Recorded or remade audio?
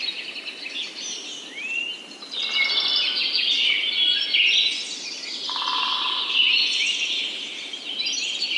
recorded